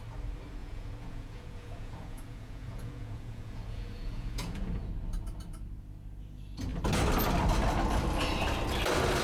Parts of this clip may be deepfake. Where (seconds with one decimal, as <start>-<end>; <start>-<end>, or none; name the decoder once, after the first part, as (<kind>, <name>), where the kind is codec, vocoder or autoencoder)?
0.6-4.9 (vocoder, Vocos)